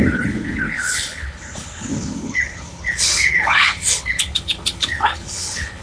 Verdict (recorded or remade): remade